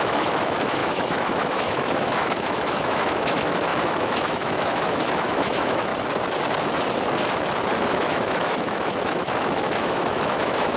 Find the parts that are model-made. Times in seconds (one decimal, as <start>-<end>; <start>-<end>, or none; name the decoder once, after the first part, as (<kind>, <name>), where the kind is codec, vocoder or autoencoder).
0.0-5.9 (autoencoder, DAC-VAE); 7.9-10.8